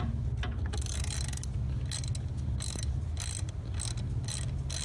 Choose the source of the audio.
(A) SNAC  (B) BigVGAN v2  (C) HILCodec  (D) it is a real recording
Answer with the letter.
D